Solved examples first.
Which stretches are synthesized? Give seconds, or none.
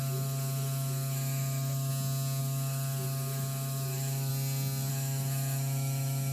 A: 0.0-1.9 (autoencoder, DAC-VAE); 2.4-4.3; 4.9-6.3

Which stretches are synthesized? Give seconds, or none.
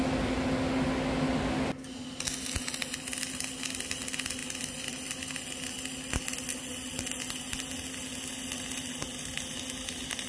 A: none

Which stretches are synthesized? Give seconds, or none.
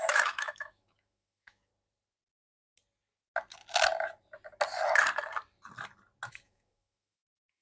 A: 0.0-1.7 (autoencoder, DAC-VAE); 6.3-7.6